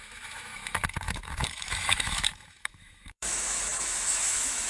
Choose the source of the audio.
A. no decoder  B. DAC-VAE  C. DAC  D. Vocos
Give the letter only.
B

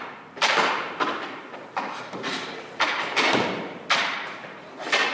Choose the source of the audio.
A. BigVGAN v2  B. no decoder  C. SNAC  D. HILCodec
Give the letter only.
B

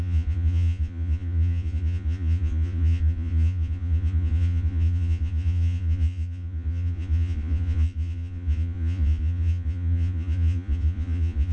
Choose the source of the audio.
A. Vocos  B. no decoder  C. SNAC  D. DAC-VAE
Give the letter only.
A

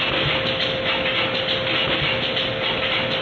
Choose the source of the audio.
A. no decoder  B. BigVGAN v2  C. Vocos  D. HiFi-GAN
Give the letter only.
A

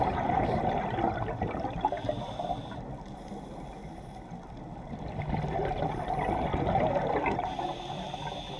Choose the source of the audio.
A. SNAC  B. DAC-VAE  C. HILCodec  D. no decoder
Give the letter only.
D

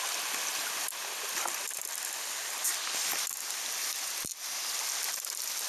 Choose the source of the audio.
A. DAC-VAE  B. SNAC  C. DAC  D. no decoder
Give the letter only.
D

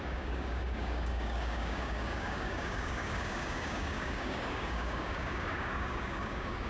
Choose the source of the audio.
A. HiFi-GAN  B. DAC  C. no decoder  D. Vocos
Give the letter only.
B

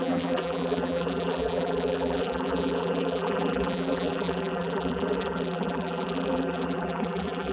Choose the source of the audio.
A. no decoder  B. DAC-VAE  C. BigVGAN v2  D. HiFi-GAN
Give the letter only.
C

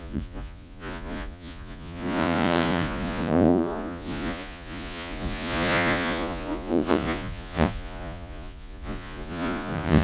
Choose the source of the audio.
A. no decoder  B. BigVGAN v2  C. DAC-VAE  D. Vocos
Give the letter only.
D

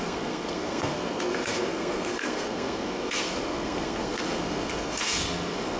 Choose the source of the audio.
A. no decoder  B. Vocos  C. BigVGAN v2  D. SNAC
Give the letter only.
D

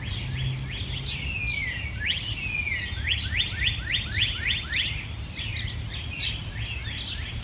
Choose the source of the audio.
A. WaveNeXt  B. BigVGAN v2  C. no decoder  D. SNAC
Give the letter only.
C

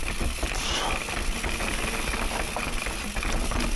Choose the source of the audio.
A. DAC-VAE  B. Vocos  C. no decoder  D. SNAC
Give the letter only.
C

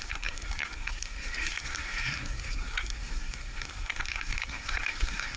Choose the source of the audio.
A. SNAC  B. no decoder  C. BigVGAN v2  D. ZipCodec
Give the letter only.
A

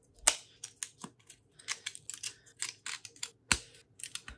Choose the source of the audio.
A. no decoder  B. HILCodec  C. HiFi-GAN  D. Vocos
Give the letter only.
A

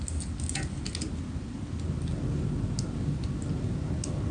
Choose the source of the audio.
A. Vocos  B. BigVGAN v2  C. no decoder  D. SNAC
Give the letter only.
C